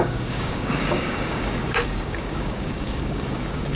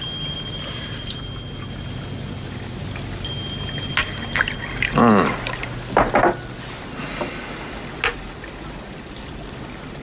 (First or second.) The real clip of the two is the second